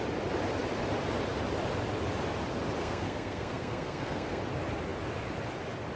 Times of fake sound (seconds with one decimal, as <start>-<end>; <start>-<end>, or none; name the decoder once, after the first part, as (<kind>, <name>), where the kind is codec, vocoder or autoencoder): 2.8-4.4 (codec, SNAC)